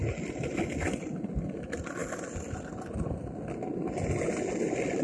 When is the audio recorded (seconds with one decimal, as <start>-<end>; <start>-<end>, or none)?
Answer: 0.0-5.0